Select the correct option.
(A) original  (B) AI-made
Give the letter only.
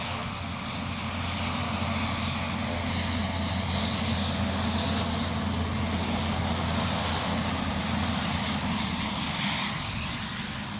A